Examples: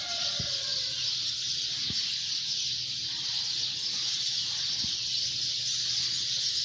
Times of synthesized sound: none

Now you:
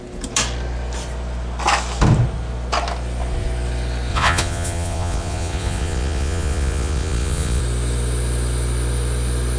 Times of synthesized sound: 4.1-7.6 (vocoder, Vocos)

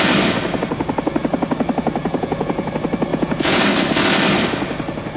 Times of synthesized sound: 2.0-2.7 (vocoder, Vocos); 3.1-3.6

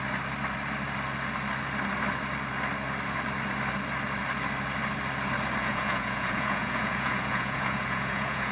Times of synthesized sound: 5.6-8.5 (vocoder, Vocos)

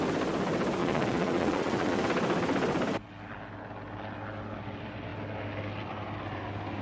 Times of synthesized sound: 0.8-2.0 (vocoder, Vocos)

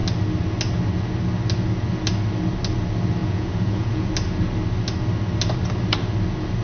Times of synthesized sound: 3.2-4.1 (vocoder, Vocos)

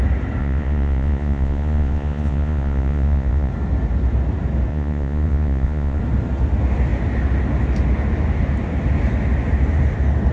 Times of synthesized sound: 0.4-3.5 (vocoder, Vocos); 4.7-6.0